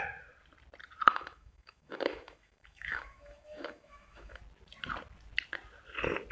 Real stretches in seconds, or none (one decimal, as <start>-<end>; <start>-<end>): 0.0-1.1; 4.4-6.3